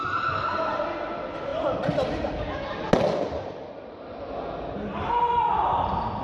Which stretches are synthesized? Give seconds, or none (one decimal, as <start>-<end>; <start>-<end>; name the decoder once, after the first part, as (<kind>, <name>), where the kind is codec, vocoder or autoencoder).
none